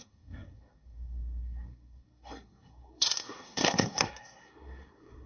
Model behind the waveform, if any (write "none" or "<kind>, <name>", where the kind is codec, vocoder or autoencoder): codec, SNAC